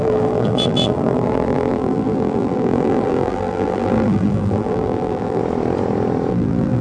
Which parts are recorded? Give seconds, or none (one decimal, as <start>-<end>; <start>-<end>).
5.4-6.3